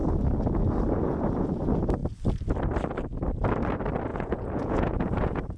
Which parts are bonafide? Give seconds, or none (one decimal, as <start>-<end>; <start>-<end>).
0.0-4.1